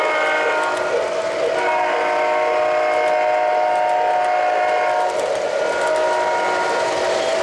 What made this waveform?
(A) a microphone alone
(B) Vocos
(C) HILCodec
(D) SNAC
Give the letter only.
A